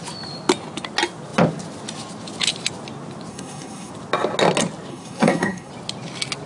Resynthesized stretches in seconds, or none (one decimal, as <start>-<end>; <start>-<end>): 3.3-3.9; 4.9-5.7

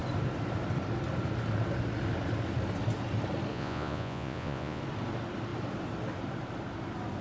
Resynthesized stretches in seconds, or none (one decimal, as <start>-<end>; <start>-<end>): 3.5-4.8

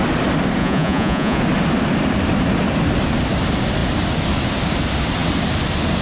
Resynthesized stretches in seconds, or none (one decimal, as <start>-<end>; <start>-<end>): 0.6-1.4

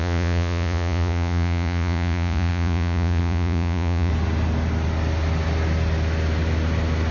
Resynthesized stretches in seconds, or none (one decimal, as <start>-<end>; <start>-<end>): 0.0-4.1

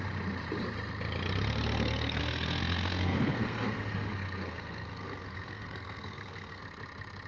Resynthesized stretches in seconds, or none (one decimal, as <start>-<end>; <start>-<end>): 2.2-6.6